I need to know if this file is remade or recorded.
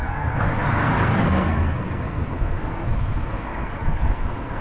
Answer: remade